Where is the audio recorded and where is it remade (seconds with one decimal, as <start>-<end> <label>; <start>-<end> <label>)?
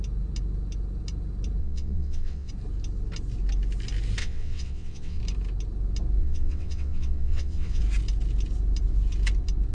0.0-1.6 recorded; 1.6-2.5 remade; 2.5-4.2 recorded; 4.2-5.2 remade; 5.2-6.2 recorded; 6.2-7.8 remade; 7.8-9.7 recorded